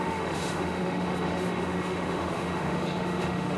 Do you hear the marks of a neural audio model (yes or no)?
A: yes